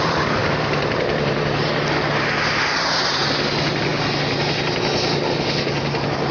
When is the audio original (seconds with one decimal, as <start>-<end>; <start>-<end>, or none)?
0.0-0.4; 1.7-6.3